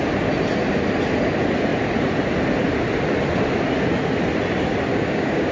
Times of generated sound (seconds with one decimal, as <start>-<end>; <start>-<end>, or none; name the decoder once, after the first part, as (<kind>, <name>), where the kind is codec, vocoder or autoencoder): 4.9-5.5 (codec, DAC)